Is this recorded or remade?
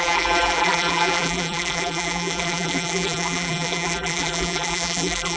remade